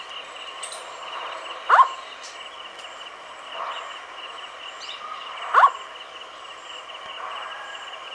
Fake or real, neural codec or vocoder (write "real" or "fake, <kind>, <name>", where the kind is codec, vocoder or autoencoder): real